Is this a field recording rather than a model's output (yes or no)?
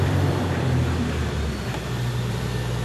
no